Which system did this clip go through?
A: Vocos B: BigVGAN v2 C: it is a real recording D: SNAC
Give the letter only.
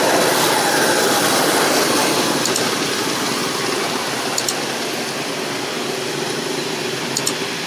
C